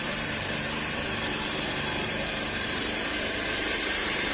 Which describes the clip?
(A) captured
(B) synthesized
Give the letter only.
B